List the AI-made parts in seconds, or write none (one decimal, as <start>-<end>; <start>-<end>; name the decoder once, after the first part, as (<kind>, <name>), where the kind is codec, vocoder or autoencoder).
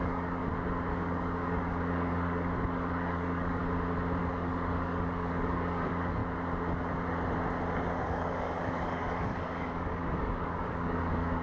0.0-0.4 (codec, DAC); 0.9-3.6; 4.2-6.2; 8.0-11.4